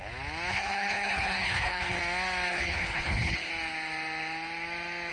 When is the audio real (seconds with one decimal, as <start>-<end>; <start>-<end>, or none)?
0.0-0.5; 2.0-2.5; 3.5-5.1